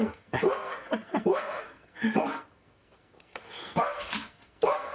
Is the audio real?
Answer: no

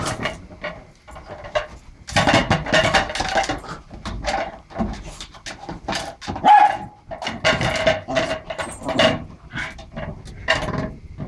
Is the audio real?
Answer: yes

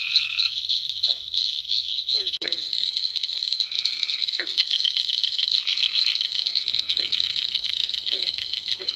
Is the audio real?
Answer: no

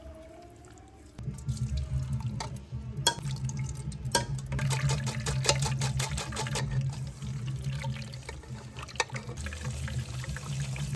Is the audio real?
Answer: yes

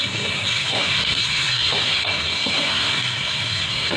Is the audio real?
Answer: no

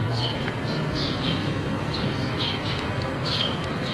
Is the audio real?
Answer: no